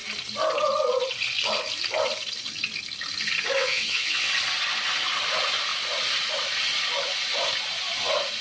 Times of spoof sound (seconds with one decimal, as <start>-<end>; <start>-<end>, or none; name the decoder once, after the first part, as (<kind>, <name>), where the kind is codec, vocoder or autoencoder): 3.6-4.3 (vocoder, WaveNeXt)